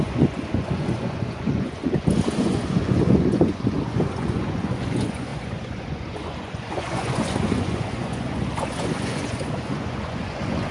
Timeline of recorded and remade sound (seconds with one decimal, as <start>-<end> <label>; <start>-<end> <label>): 0.0-10.7 remade